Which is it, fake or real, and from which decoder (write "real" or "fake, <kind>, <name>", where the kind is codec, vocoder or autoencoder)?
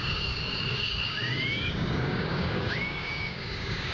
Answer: fake, codec, DAC